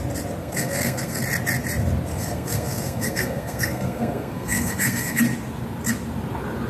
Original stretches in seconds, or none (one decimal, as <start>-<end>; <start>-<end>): 0.0-0.4; 1.2-2.1; 5.2-6.7